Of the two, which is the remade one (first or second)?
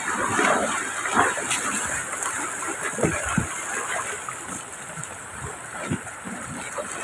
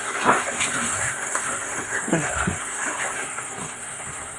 second